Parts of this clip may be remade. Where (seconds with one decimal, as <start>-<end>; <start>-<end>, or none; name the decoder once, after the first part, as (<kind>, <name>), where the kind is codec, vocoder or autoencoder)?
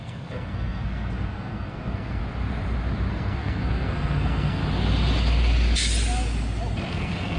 0.0-2.2 (codec, SNAC); 3.1-4.6; 6.9-7.4